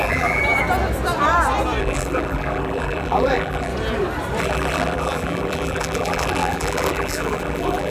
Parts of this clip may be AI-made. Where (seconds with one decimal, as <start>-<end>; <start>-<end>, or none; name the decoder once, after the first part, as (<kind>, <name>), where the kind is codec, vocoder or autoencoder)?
0.0-0.4 (vocoder, BigVGAN v2); 1.8-3.7; 4.4-7.9